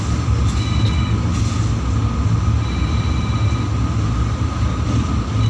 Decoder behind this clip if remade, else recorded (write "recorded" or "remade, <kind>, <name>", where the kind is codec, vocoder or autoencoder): recorded